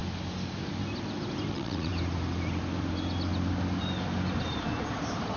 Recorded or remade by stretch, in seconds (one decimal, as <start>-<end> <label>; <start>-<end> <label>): 0.0-1.5 recorded; 1.5-1.9 remade; 1.9-5.4 recorded